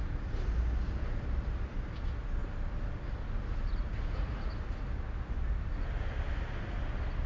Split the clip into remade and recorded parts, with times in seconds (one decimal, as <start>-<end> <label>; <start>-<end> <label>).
0.0-7.3 recorded